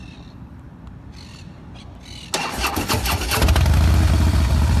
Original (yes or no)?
yes